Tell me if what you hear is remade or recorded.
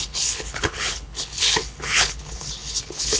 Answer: remade